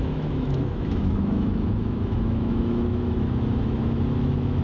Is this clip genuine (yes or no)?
no